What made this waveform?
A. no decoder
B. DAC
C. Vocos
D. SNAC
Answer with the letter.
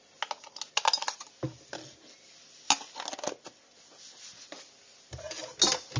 A